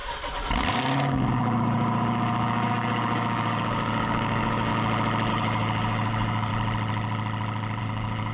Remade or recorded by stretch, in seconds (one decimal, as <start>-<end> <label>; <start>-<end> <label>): 0.0-0.7 recorded; 0.7-4.7 remade; 4.7-5.3 recorded; 5.3-6.5 remade; 6.5-7.8 recorded; 7.8-8.3 remade

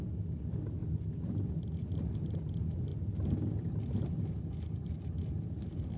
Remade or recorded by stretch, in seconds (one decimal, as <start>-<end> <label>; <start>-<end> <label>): 0.0-6.0 recorded

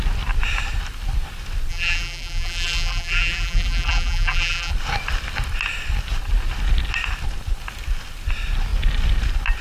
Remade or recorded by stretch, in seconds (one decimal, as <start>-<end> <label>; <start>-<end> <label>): 0.0-1.7 recorded; 1.7-4.7 remade; 4.7-9.6 recorded

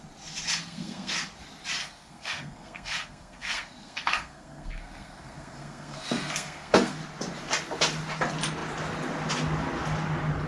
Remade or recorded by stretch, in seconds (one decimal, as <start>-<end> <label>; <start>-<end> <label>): 0.0-0.6 recorded; 0.6-1.1 remade; 1.1-1.8 recorded; 1.8-7.0 remade; 7.0-10.5 recorded